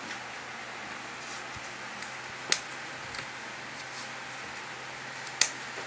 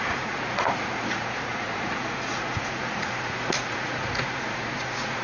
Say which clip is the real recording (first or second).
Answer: first